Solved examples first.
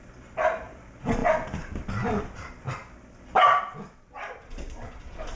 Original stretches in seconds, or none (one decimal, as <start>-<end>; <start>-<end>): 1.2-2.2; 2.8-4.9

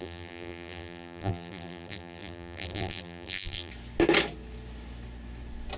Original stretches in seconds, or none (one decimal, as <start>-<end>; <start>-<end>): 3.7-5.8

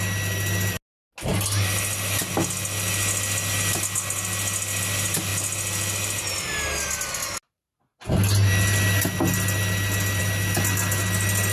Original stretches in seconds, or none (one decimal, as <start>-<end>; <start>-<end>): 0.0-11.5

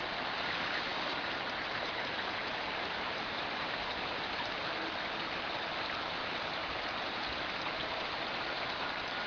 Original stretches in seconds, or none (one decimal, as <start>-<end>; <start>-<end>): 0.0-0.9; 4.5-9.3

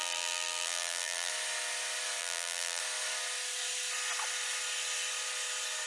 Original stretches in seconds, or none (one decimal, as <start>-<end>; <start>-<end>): 1.3-2.2; 2.8-5.9